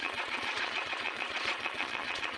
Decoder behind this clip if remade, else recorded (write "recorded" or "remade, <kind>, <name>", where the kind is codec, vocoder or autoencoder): remade, vocoder, Vocos